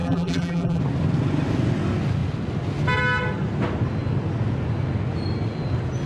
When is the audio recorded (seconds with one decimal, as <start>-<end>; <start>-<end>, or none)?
0.8-6.1